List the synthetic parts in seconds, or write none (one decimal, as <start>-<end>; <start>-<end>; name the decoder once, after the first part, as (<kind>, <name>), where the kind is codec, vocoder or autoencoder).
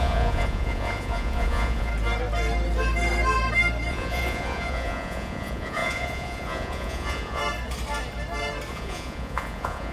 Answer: 0.0-1.9 (vocoder, Vocos); 3.9-7.4; 8.7-9.9